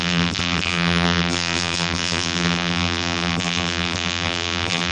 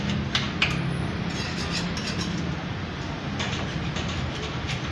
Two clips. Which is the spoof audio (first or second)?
first